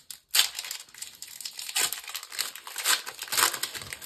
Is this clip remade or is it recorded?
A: recorded